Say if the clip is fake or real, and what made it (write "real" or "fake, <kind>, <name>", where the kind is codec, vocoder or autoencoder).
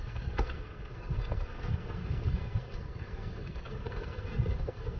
fake, codec, SNAC